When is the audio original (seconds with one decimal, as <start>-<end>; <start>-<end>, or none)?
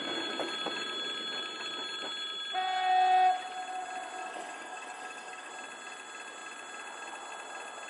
0.0-4.2; 5.5-7.9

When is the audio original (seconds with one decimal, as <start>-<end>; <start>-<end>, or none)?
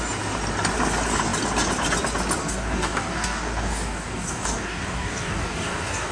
0.0-2.4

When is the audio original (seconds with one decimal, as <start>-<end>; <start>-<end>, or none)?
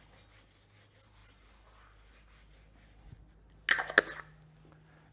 0.0-5.1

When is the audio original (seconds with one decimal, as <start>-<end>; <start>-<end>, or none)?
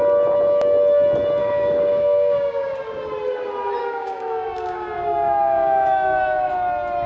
0.0-1.4; 2.8-3.8; 6.5-7.1